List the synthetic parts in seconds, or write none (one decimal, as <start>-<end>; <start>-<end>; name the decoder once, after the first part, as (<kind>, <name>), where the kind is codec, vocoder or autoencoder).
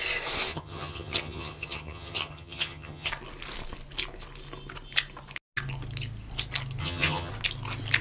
0.5-3.1 (vocoder, HiFi-GAN); 6.8-7.3